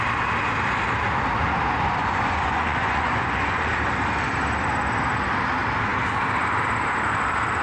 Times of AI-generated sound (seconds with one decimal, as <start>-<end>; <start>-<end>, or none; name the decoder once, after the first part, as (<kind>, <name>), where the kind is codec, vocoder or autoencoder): 2.0-3.7 (vocoder, Vocos)